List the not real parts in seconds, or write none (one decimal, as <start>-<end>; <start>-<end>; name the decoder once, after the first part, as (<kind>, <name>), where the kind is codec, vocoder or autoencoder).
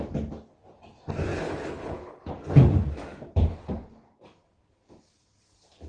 1.3-2.3 (codec, HILCodec)